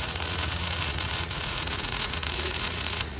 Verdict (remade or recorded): remade